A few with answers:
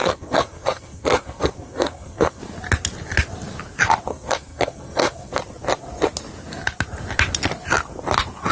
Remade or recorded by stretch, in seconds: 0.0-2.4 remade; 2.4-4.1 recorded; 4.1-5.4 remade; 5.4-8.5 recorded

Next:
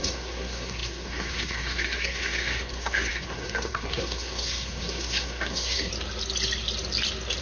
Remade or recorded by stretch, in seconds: 0.0-5.9 remade; 5.9-7.4 recorded

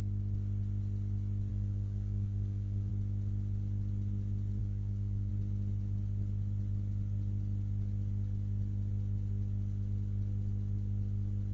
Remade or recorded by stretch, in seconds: 0.0-1.5 recorded; 1.5-2.9 remade; 2.9-4.6 recorded; 4.6-5.3 remade; 5.3-11.5 recorded

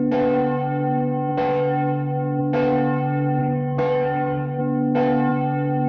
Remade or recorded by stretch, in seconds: 0.0-3.4 recorded; 3.4-4.6 remade; 4.6-5.9 recorded